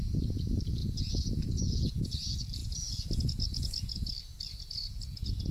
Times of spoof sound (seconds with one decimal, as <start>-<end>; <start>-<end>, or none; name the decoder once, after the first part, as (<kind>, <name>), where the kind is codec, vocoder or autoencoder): 0.8-2.1 (vocoder, Vocos); 2.6-4.1; 4.5-5.5